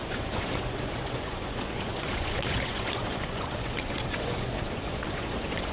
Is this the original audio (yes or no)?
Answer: no